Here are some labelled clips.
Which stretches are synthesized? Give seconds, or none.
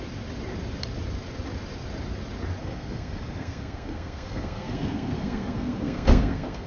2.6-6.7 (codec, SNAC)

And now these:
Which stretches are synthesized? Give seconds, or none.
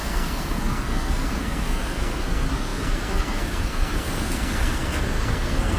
0.0-5.8 (codec, SNAC)